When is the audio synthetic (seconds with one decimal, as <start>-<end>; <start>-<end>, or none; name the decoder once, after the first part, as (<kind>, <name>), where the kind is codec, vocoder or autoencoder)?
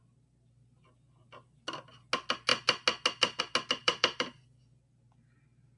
3.8-4.6 (vocoder, BigVGAN v2)